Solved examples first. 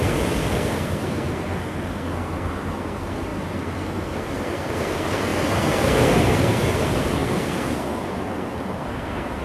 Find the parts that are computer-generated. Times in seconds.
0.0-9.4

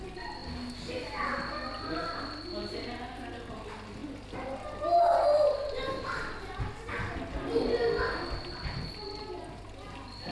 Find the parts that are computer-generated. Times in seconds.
none

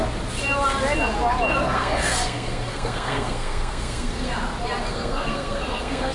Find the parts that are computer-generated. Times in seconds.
1.5-4.3; 4.9-6.1

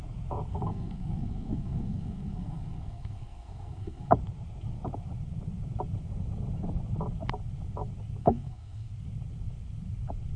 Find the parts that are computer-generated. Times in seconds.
0.5-4.1; 8.2-8.9

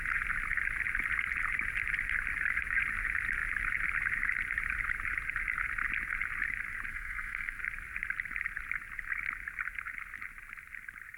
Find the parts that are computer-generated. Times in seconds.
6.9-7.6